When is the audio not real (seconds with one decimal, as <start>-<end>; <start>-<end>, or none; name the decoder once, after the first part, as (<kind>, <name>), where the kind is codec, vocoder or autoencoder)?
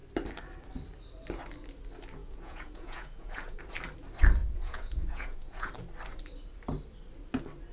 2.2-3.6 (vocoder, Vocos); 4.4-5.7